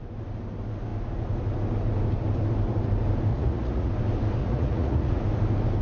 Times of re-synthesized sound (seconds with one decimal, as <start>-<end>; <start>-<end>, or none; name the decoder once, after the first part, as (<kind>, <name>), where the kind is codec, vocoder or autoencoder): 3.3-3.9 (vocoder, Vocos); 4.4-5.2